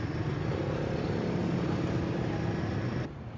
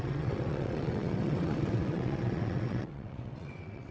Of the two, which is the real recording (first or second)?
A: first